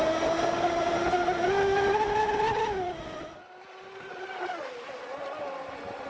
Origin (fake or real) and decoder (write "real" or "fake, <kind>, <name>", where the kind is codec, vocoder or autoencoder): real